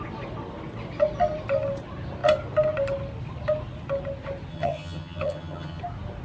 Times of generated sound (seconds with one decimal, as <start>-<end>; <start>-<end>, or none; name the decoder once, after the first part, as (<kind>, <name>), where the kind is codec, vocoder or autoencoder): 4.5-5.8 (vocoder, HiFi-GAN)